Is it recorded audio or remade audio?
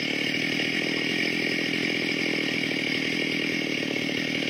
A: recorded